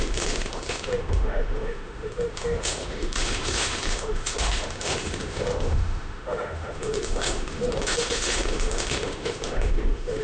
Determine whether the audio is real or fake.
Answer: fake